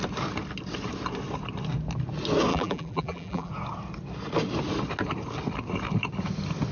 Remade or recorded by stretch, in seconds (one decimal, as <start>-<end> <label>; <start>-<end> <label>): 0.0-2.5 recorded; 2.5-3.5 remade; 3.5-6.7 recorded